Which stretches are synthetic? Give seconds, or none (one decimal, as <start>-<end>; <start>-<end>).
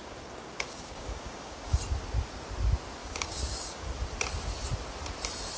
0.0-1.8; 3.0-3.9